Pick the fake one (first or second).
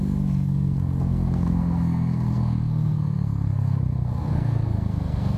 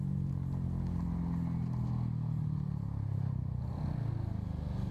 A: first